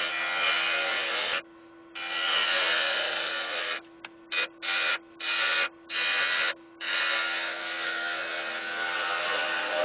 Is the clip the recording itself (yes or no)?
yes